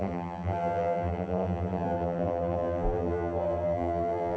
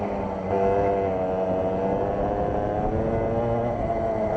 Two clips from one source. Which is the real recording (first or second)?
second